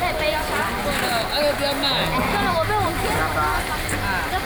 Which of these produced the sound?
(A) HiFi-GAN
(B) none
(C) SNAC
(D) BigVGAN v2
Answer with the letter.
B